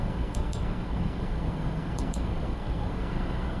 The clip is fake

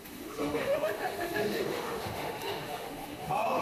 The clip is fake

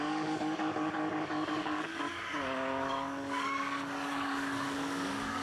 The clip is fake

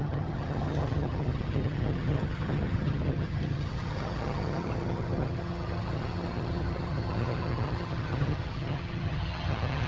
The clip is fake